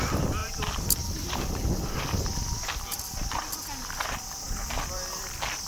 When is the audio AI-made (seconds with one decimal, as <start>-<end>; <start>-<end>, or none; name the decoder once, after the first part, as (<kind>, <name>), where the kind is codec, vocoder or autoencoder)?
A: 0.0-5.7 (vocoder, BigVGAN v2)